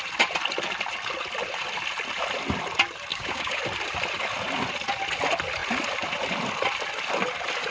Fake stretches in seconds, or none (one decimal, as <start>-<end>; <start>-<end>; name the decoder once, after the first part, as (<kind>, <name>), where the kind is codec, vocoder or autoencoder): 3.1-3.6 (codec, DAC)